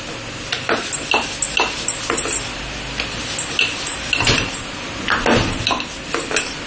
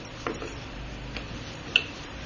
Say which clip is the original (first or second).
first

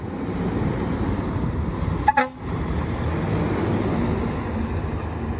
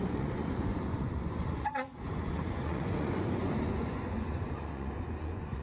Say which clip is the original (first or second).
first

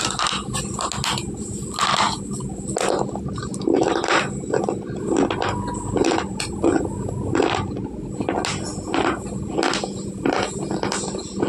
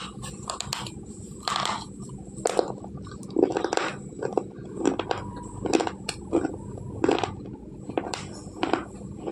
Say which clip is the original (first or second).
first